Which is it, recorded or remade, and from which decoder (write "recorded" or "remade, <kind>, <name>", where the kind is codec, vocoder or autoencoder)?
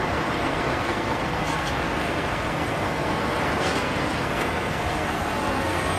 remade, codec, SNAC